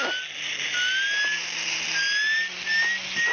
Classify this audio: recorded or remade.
recorded